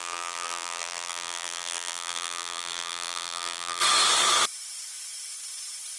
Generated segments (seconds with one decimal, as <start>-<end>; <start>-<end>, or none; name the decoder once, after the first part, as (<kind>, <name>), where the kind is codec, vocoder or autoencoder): 0.0-3.8 (vocoder, BigVGAN v2)